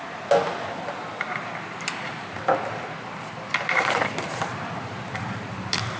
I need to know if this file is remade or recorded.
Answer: recorded